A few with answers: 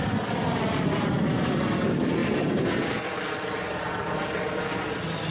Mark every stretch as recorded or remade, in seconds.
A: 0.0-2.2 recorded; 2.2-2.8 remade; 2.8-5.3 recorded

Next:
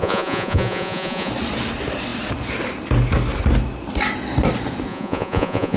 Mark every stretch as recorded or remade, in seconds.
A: 0.0-1.3 remade; 1.3-4.9 recorded; 4.9-5.8 remade

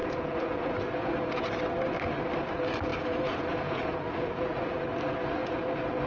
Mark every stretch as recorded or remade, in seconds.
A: 0.0-1.4 remade; 1.4-2.9 recorded; 2.9-4.8 remade; 4.8-5.4 recorded; 5.4-6.1 remade

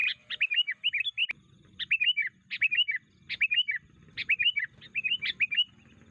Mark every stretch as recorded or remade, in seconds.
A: 0.0-1.2 recorded; 1.2-1.8 remade; 1.8-6.1 recorded

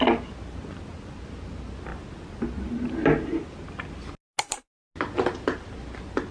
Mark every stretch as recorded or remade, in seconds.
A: 0.0-6.3 recorded

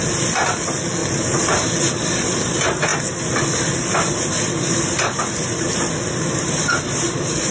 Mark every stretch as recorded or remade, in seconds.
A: 0.0-7.5 recorded